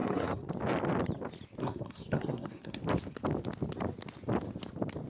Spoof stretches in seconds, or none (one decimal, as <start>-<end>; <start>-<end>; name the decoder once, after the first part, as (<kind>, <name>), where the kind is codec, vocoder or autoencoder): 0.0-0.5 (codec, SNAC); 1.6-2.8